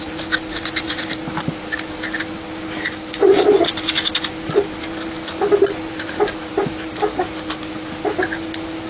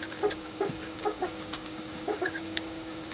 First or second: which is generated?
second